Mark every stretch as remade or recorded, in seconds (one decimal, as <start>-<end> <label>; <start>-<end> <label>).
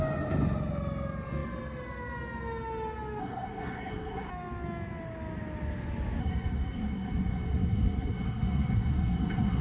0.0-3.2 recorded; 3.2-4.3 remade; 4.3-6.2 recorded; 6.2-9.6 remade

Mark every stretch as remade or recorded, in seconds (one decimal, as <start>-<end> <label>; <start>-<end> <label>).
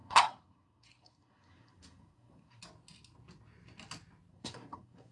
0.0-2.6 remade; 2.6-4.3 recorded; 4.3-5.1 remade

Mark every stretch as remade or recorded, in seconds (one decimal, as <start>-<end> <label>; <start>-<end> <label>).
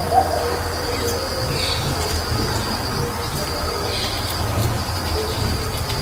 0.0-4.6 recorded; 4.6-6.0 remade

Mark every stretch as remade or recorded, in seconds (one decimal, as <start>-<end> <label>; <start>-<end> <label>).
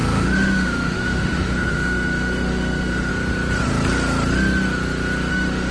0.0-3.1 remade; 3.1-5.3 recorded; 5.3-5.7 remade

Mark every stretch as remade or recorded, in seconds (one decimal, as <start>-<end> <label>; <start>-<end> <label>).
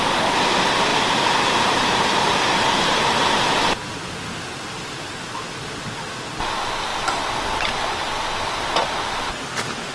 0.0-0.9 recorded; 0.9-2.6 remade; 2.6-9.9 recorded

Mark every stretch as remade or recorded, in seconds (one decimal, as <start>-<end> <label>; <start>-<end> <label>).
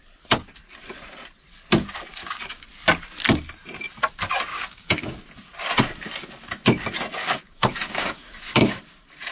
0.0-2.1 recorded; 2.1-2.7 remade; 2.7-4.5 recorded; 4.5-5.2 remade; 5.2-7.2 recorded; 7.2-8.8 remade; 8.8-9.3 recorded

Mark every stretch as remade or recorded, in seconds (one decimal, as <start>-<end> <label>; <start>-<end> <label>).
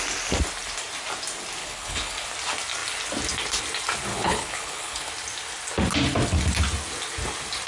0.0-1.6 recorded; 1.6-2.3 remade; 2.3-4.1 recorded; 4.1-5.1 remade; 5.1-7.7 recorded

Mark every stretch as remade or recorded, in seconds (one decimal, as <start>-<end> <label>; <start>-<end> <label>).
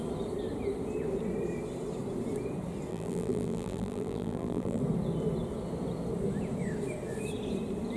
0.0-2.9 recorded; 2.9-4.8 remade; 4.8-8.0 recorded